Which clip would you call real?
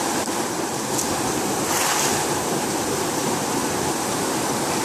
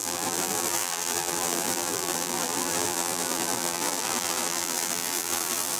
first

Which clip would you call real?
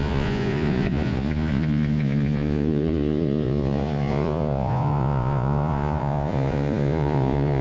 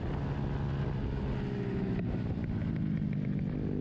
second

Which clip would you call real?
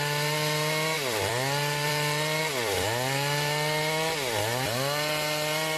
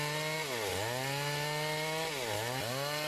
second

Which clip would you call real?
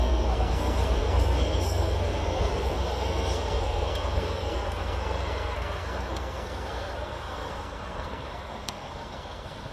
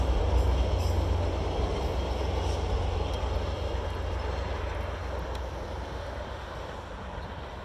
second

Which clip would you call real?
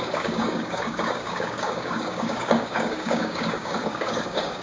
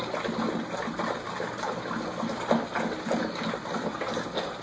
second